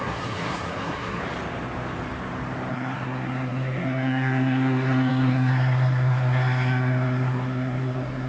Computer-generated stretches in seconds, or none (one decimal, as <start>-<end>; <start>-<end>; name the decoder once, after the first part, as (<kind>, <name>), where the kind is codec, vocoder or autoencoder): 0.0-1.2 (codec, SNAC); 2.7-8.3